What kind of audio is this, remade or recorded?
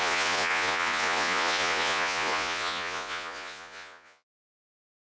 remade